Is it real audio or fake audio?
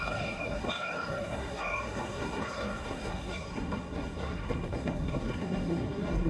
fake